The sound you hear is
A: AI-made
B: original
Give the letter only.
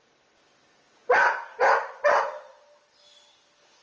B